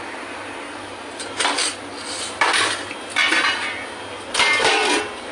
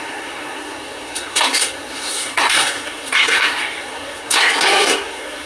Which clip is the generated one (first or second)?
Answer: second